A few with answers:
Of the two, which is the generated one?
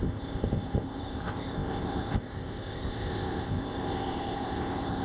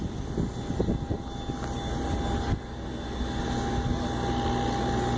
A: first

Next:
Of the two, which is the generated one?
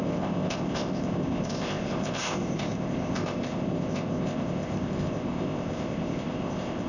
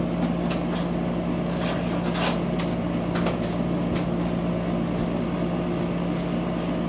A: first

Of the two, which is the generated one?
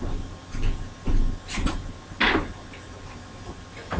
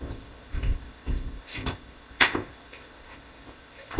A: second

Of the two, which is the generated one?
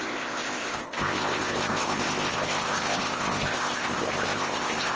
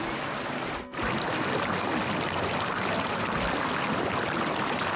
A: first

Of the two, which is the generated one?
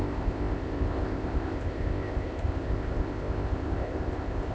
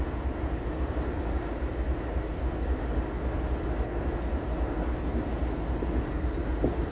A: first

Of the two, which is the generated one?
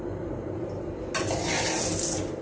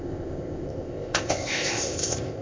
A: second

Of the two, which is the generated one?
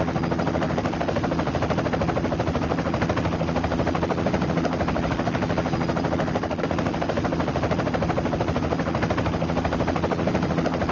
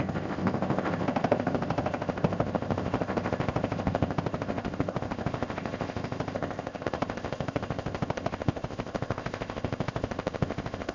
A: second